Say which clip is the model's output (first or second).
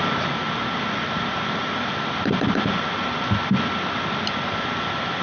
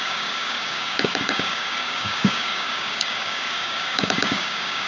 second